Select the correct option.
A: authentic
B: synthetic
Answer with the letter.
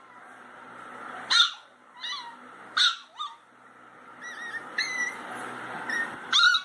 A